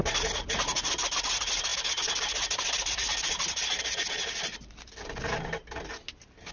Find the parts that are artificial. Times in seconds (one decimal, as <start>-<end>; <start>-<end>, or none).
none